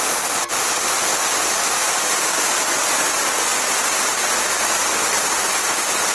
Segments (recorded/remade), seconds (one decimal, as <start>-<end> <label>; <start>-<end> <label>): 0.0-6.1 recorded